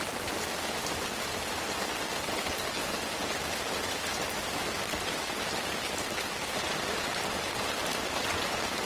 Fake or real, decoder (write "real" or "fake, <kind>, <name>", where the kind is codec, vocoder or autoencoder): real